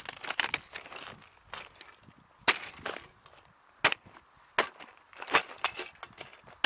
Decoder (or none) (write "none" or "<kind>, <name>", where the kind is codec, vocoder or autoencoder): none